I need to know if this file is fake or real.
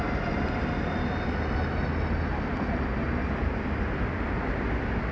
real